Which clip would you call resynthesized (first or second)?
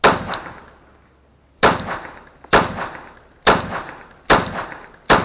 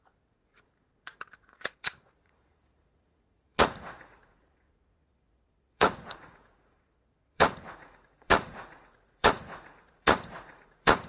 second